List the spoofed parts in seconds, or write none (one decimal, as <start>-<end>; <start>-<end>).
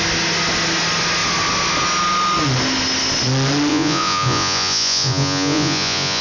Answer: 3.7-6.2